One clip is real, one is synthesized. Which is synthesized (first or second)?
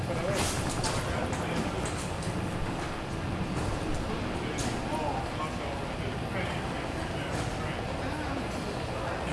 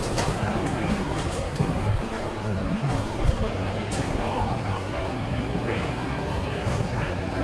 second